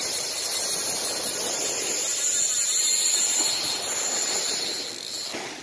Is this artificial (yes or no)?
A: yes